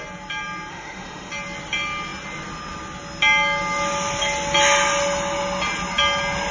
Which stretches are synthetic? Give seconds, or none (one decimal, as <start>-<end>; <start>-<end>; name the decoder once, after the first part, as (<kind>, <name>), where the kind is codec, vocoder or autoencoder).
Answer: 0.7-1.3 (autoencoder, DAC-VAE)